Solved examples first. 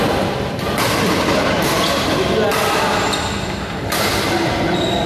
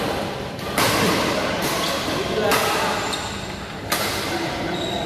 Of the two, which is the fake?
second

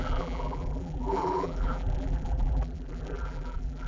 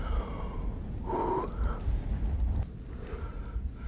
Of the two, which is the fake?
first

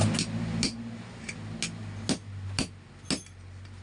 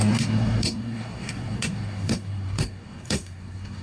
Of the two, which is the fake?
second